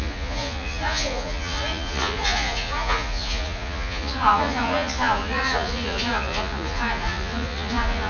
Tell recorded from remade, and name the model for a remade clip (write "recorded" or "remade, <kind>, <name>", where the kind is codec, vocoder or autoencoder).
remade, vocoder, Vocos